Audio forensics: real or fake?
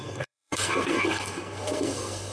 fake